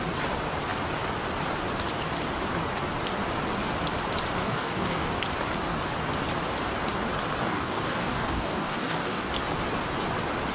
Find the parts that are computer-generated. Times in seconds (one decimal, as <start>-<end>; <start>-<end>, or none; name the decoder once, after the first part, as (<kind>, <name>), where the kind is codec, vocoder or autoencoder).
4.4-5.2 (codec, DAC); 7.4-9.3